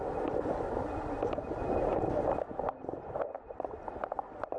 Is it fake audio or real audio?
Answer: real